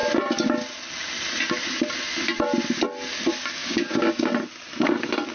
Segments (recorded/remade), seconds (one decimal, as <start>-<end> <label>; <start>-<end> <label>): 0.0-3.6 recorded; 3.6-4.3 remade; 4.3-5.3 recorded